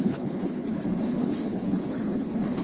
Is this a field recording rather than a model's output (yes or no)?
no